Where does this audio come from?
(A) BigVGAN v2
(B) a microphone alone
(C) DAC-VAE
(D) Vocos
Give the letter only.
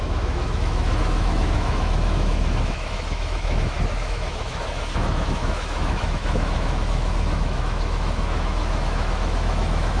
C